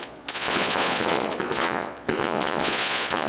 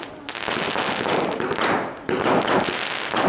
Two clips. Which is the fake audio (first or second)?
first